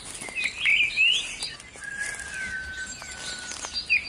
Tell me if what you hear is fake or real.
real